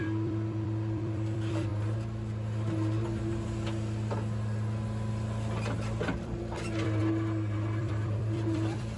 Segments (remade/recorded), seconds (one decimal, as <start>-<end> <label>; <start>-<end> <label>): 0.0-1.7 remade; 1.7-5.1 recorded; 5.1-7.0 remade; 7.0-7.8 recorded; 7.8-9.0 remade